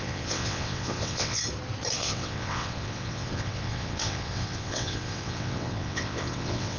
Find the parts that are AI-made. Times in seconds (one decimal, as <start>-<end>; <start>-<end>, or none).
0.0-1.4; 2.0-6.8